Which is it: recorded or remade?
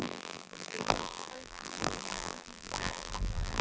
remade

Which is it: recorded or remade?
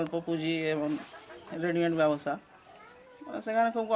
recorded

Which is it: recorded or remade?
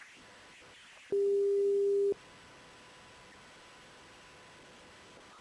recorded